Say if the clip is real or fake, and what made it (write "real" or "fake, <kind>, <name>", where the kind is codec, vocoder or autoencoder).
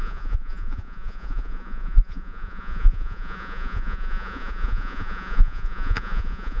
fake, vocoder, Vocos